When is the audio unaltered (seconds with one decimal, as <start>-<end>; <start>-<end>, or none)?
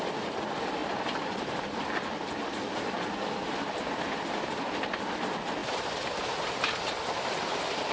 0.0-7.9